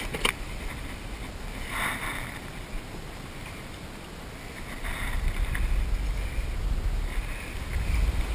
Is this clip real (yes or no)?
yes